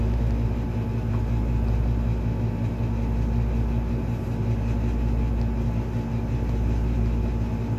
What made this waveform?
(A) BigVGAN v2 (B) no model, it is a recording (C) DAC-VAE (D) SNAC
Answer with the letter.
B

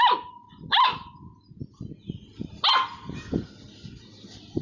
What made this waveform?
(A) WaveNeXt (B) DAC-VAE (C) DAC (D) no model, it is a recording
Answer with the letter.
D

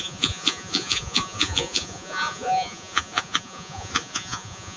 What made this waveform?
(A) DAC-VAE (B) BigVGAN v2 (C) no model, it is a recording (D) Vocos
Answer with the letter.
D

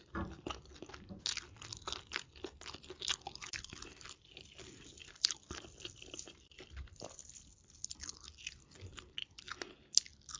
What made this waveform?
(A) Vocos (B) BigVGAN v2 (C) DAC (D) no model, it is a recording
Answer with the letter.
D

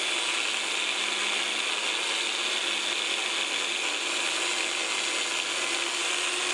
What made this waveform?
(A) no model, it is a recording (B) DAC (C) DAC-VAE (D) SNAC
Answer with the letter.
A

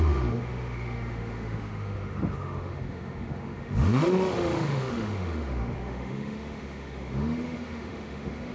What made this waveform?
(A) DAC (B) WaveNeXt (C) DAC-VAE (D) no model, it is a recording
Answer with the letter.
C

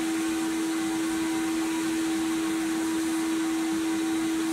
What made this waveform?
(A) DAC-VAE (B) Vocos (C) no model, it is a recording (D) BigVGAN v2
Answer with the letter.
C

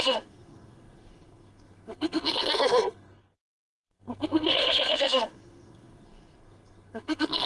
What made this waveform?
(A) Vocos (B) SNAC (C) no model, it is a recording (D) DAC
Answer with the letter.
B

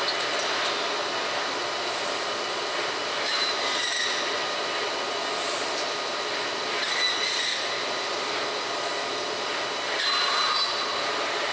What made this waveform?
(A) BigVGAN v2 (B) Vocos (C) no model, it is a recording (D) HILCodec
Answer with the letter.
C